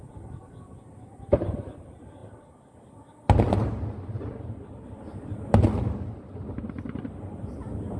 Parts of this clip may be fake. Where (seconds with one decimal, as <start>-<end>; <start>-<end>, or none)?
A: none